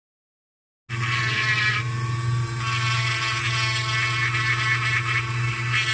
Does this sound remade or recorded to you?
recorded